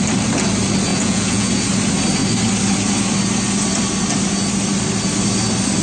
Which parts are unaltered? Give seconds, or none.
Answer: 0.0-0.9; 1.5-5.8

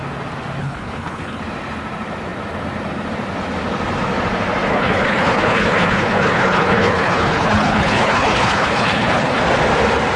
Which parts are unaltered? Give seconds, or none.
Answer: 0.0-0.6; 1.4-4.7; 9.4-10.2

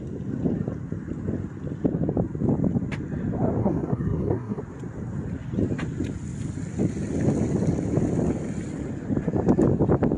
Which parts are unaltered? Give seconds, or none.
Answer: 0.0-3.6; 4.6-10.2